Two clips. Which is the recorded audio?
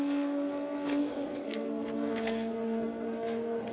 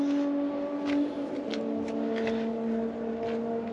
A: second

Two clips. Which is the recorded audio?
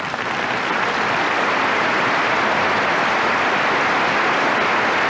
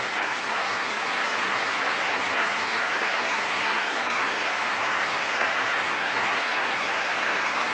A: first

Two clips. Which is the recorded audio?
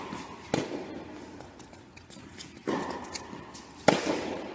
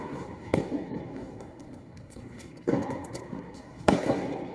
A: first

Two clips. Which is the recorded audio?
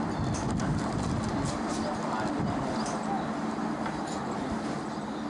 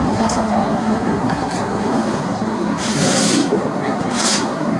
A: first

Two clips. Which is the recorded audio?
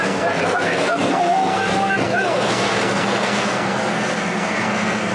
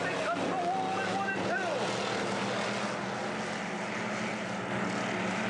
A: second